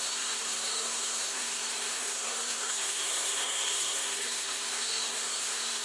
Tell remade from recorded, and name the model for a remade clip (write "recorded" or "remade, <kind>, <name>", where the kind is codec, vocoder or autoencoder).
remade, codec, SNAC